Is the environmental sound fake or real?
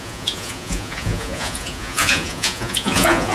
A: fake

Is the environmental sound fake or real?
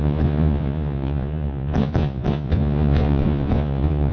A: fake